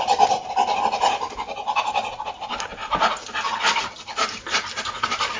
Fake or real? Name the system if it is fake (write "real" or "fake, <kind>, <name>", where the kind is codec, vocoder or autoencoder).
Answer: real